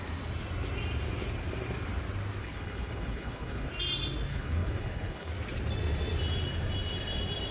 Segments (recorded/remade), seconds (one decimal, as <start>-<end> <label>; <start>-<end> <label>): 0.0-2.4 recorded; 2.4-3.7 remade; 3.7-4.3 recorded; 4.3-5.3 remade; 5.3-7.5 recorded